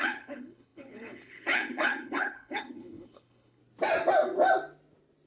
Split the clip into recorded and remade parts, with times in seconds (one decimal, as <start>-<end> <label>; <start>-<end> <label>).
0.0-3.6 remade; 3.6-5.3 recorded